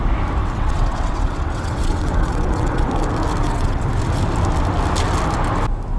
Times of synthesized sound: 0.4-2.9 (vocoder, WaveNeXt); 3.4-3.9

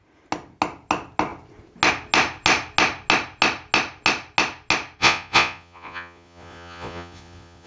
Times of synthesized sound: 5.0-7.7 (vocoder, Vocos)

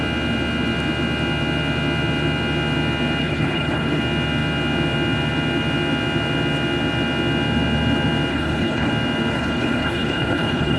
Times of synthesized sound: 3.2-4.0 (codec, HILCodec); 8.3-8.9; 9.3-10.8

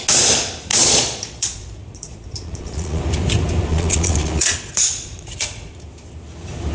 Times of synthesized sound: 0.7-3.0 (vocoder, Vocos); 3.7-5.7

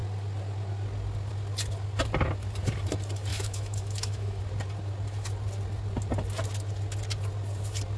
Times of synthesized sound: 3.3-4.4 (autoencoder, DAC-VAE)